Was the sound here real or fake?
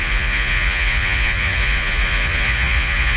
fake